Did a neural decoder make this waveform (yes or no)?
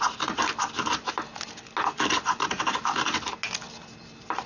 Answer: no